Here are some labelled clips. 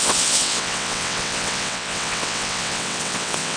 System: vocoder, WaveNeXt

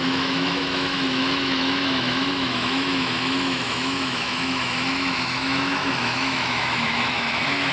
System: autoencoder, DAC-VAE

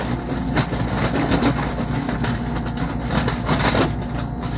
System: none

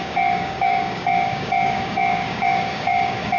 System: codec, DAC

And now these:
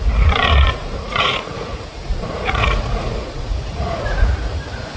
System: vocoder, Vocos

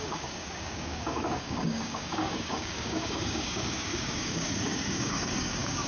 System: codec, DAC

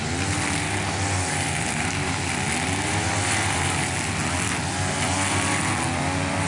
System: none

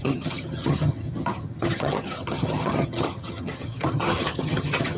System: vocoder, HiFi-GAN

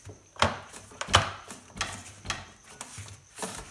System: none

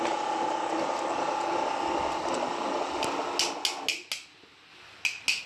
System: none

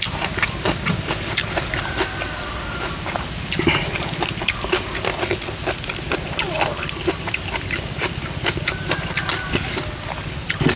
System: none